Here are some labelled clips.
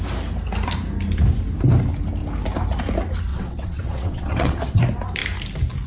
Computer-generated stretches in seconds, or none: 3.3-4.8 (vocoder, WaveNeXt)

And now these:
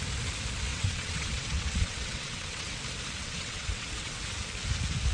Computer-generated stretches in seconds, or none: 0.7-2.8 (vocoder, WaveNeXt); 3.2-4.2

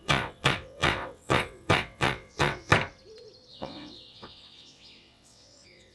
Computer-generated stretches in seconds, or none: 0.0-2.7 (vocoder, WaveNeXt); 3.5-5.9